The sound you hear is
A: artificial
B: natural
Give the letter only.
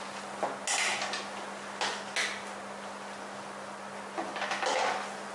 B